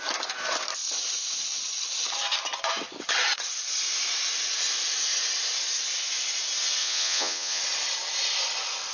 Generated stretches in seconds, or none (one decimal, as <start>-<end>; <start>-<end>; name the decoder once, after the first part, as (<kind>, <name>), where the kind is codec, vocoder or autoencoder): 6.8-7.6 (vocoder, Vocos)

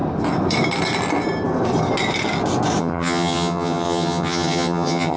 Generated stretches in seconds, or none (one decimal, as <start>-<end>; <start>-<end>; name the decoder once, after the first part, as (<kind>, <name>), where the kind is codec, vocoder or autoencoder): 2.8-5.2 (vocoder, HiFi-GAN)

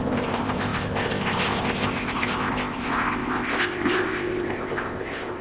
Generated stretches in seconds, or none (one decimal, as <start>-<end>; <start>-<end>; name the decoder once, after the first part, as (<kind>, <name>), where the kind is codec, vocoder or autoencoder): 0.0-5.4 (codec, ZipCodec)

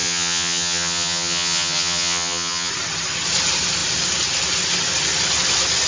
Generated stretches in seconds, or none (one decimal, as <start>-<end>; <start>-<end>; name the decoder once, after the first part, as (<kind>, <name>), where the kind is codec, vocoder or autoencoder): 0.0-2.7 (vocoder, HiFi-GAN)

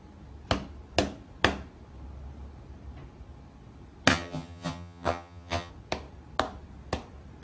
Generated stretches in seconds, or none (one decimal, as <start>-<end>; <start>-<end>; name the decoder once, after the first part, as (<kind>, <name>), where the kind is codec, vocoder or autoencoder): 4.1-5.7 (vocoder, HiFi-GAN)